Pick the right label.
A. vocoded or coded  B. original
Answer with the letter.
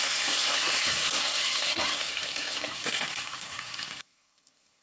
A